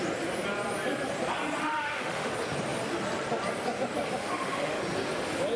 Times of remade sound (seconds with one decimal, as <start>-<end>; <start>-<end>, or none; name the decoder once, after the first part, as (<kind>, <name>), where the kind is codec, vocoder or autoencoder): 1.6-2.3 (autoencoder, DAC-VAE); 4.2-4.8